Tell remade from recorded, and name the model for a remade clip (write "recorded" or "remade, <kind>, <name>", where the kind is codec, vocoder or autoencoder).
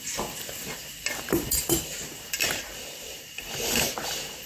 remade, vocoder, BigVGAN v2